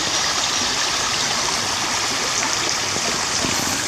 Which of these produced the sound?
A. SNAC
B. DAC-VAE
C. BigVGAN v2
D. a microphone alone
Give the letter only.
D